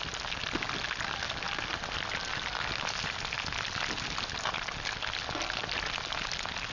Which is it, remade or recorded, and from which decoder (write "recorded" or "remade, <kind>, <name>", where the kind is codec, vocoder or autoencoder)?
recorded